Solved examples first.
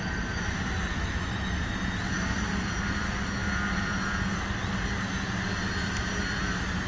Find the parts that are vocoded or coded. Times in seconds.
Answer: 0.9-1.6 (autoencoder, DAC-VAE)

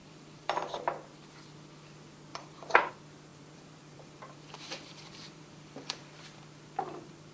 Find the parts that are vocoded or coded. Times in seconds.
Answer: 0.0-0.7 (vocoder, BigVGAN v2); 2.3-2.9; 3.3-6.4

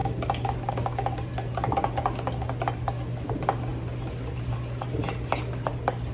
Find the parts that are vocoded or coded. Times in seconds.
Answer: none

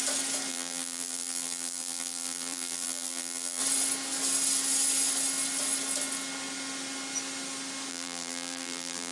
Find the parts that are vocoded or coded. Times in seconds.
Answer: 0.5-3.6 (vocoder, BigVGAN v2); 7.9-9.1

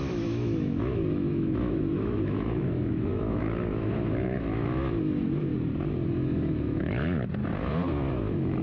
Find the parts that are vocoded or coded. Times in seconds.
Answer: 0.0-5.5 (autoencoder, DAC-VAE); 6.3-7.4; 8.1-8.6